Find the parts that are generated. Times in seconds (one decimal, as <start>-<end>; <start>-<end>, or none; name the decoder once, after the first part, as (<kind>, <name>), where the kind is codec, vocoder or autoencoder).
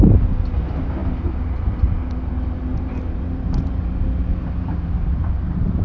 none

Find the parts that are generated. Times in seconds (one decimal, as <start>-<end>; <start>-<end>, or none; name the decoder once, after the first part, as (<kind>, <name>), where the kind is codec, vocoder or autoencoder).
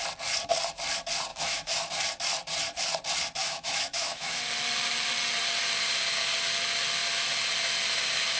1.3-1.9 (autoencoder, DAC-VAE); 3.4-4.4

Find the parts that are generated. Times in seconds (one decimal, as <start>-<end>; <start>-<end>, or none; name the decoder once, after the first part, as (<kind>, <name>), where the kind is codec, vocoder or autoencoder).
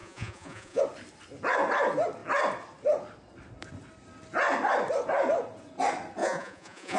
0.0-0.8 (vocoder, Vocos); 6.2-7.0